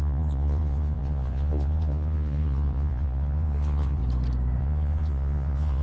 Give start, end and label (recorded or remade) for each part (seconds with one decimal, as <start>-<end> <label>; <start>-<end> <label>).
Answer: 0.0-4.0 remade; 4.0-4.6 recorded; 4.6-5.8 remade